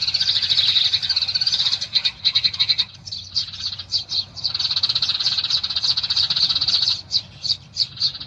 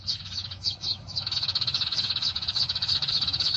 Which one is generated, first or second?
second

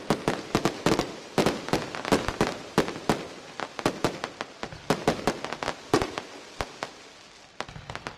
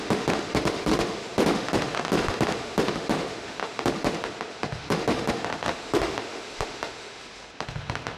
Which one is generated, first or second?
second